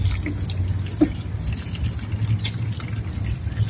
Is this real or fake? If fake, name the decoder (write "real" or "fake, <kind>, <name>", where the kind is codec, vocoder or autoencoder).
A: real